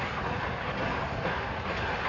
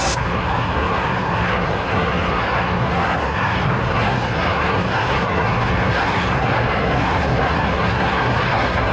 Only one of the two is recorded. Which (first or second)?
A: first